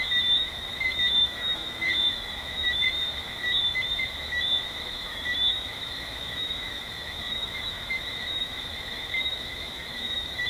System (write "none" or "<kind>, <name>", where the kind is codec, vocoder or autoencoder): autoencoder, DAC-VAE